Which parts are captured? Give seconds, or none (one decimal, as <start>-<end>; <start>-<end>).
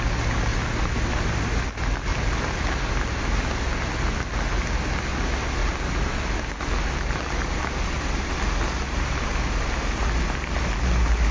0.0-0.5; 1.7-2.1; 2.8-11.3